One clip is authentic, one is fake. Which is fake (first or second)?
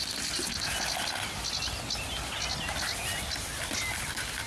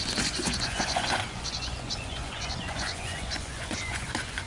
second